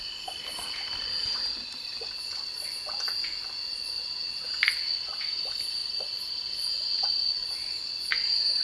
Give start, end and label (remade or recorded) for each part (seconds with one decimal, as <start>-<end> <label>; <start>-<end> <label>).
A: 0.0-8.6 recorded